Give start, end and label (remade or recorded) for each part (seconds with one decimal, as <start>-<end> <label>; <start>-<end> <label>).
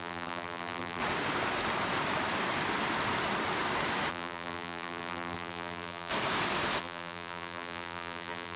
0.0-1.0 remade; 1.0-4.1 recorded; 4.1-6.1 remade; 6.1-6.8 recorded; 6.8-8.6 remade